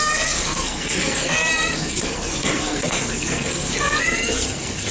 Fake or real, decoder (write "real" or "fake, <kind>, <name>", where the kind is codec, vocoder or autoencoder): fake, codec, SNAC